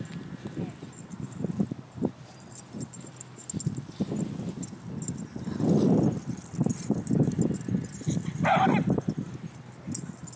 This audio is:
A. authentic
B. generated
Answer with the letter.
A